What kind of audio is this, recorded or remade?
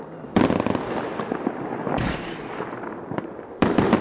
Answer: recorded